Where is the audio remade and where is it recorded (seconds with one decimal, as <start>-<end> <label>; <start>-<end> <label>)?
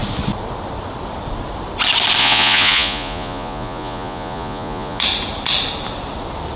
0.0-2.2 recorded; 2.2-5.0 remade; 5.0-6.6 recorded